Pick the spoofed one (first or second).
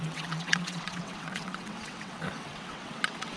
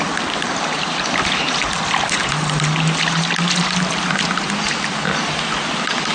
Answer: first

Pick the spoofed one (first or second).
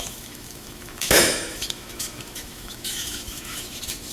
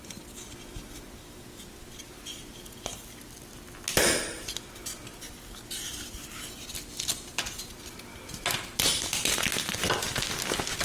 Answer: first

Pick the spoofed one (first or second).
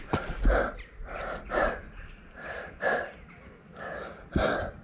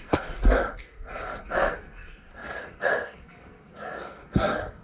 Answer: second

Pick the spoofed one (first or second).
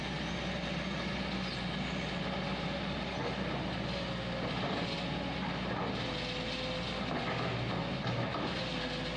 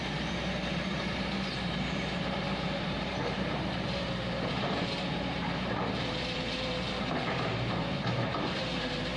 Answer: second